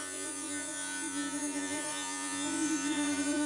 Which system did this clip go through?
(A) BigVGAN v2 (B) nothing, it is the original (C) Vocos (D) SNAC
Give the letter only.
C